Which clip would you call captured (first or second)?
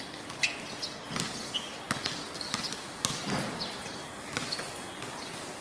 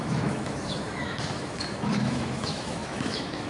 first